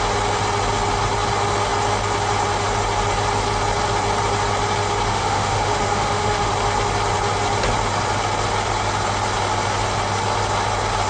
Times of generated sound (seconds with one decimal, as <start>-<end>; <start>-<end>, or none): 5.1-6.5